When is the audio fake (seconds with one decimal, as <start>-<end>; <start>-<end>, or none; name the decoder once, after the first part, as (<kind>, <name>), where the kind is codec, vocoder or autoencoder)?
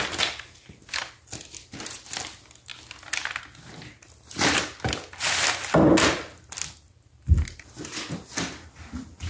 none